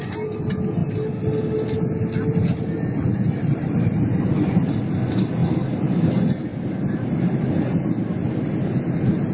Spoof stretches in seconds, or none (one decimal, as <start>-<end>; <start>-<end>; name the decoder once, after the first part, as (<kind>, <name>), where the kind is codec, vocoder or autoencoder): 5.4-6.1 (vocoder, BigVGAN v2); 6.5-8.7